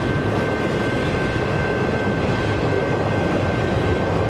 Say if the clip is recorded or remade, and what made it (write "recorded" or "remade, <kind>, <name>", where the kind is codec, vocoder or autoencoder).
recorded